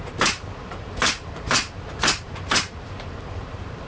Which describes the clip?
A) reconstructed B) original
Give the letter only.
A